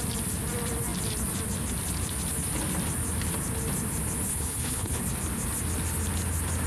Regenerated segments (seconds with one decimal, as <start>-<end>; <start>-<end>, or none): 4.3-5.0

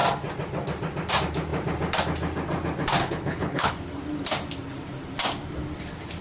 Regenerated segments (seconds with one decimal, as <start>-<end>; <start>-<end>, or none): 3.0-3.7

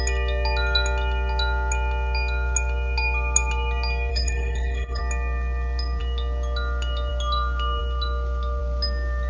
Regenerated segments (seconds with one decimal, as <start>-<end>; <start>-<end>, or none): 4.1-5.0

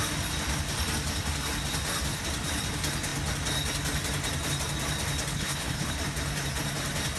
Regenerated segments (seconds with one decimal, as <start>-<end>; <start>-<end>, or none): 5.3-6.0